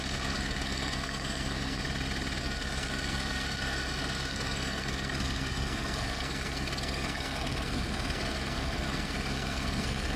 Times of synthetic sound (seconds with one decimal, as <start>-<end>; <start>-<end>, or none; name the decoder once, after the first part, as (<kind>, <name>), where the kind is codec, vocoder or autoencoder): 0.0-1.8 (codec, SNAC); 2.4-10.2